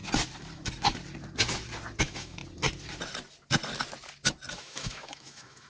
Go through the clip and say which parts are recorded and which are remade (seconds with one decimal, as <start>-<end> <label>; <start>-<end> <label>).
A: 0.0-2.0 recorded; 2.0-2.4 remade; 2.4-4.5 recorded; 4.5-5.7 remade